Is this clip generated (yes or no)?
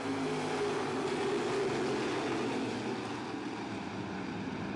no